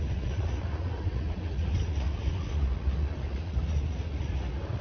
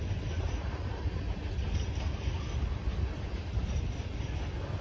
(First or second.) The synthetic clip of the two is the first